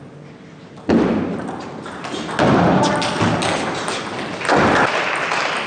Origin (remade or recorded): recorded